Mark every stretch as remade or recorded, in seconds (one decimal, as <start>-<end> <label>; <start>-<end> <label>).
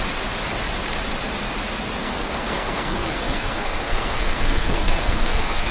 0.0-2.0 recorded; 2.0-5.7 remade